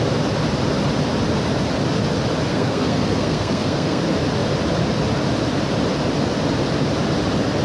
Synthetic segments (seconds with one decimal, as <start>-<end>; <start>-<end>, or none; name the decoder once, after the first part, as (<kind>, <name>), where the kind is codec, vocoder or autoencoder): 2.5-4.0 (codec, SNAC)